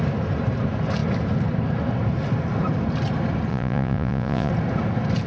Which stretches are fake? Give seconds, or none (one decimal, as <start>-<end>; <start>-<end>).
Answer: 3.5-4.5